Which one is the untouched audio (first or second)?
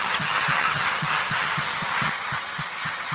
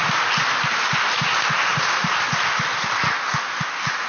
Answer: second